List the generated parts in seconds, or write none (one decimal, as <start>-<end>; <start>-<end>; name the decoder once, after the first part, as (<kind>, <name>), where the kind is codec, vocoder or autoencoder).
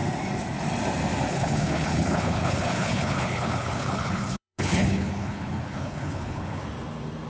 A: 1.3-6.6 (codec, HILCodec)